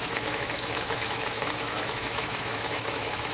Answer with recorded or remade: remade